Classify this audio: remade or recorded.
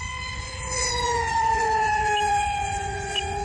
remade